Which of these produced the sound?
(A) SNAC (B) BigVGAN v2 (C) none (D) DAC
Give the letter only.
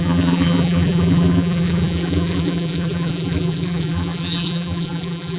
B